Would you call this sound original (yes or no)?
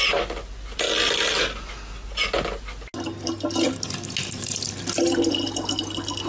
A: yes